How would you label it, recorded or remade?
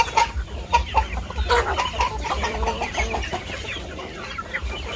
remade